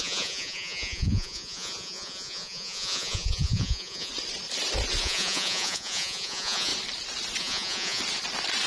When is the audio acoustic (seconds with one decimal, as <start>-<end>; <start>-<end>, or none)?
4.1-5.0; 6.7-7.4; 8.0-8.7